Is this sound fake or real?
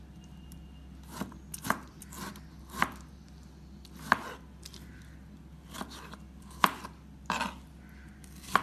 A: real